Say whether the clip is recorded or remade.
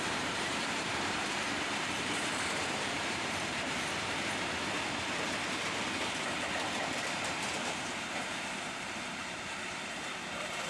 remade